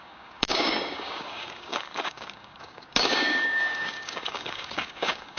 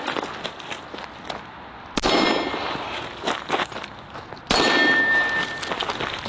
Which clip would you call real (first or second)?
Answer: second